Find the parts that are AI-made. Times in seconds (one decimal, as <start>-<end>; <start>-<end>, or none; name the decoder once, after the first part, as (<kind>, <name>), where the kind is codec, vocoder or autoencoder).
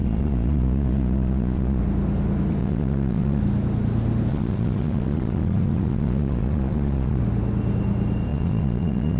0.0-1.8 (vocoder, Vocos); 2.6-3.4; 4.3-7.2; 8.3-9.2